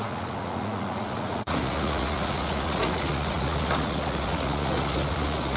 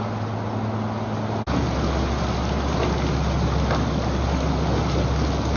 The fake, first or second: first